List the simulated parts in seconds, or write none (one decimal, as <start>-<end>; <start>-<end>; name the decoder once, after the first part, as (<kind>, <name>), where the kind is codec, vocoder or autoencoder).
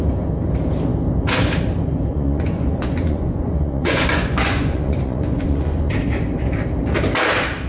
2.1-5.9 (vocoder, Vocos)